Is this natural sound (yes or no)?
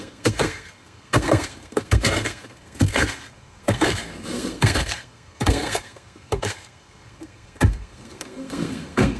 no